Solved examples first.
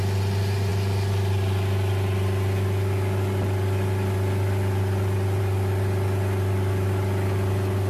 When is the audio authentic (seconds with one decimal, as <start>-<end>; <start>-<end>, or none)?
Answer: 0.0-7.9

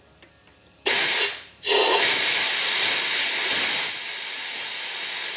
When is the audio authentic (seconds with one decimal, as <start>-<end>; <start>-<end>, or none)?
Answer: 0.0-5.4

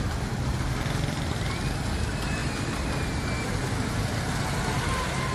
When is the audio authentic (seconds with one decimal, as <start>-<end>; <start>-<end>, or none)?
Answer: 0.0-5.3